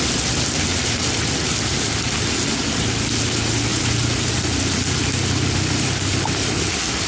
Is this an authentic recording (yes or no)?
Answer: yes